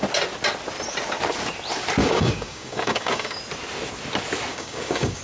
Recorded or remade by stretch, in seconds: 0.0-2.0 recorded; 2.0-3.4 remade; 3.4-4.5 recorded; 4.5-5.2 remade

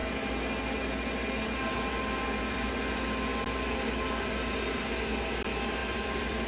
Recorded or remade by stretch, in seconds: 0.0-5.8 recorded; 5.8-6.5 remade

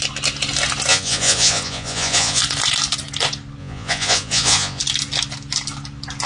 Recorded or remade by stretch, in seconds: 0.0-0.9 recorded; 0.9-2.4 remade; 2.4-3.6 recorded; 3.6-4.8 remade; 4.8-6.3 recorded

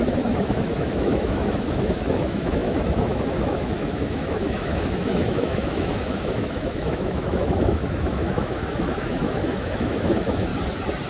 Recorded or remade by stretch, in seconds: 0.0-10.5 remade; 10.5-11.1 recorded